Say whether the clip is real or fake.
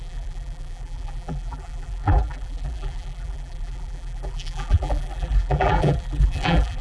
fake